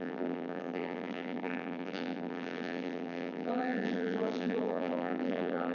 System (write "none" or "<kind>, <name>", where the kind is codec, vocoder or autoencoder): vocoder, BigVGAN v2